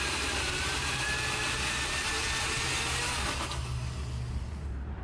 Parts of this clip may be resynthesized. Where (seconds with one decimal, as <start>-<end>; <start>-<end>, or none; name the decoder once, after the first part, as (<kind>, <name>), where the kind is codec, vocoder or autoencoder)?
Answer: 0.0-2.1 (vocoder, BigVGAN v2); 4.4-5.0